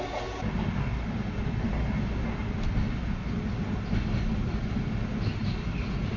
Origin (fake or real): real